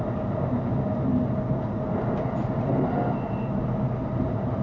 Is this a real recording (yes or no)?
yes